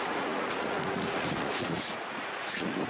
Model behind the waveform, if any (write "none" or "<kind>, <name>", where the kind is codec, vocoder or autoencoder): vocoder, Vocos